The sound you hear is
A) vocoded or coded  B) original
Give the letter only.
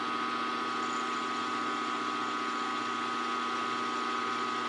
B